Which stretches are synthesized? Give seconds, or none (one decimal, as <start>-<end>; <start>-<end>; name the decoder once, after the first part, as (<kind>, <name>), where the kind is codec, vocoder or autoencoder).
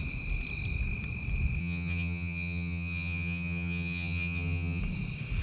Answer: 1.6-4.8 (vocoder, HiFi-GAN)